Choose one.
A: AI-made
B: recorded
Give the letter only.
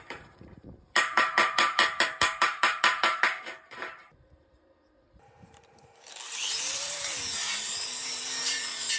A